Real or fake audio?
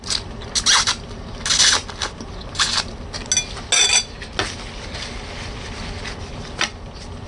real